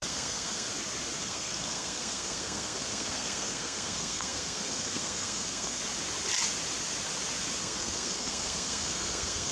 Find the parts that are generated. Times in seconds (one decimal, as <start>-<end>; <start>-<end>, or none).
0.0-0.7; 1.2-5.8; 7.6-9.5